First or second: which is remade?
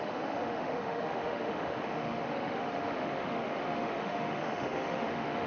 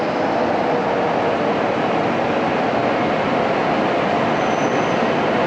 first